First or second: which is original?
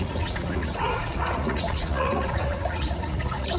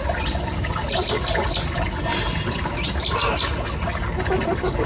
second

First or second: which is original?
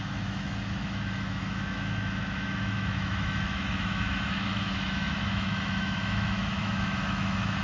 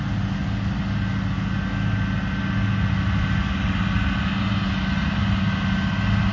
second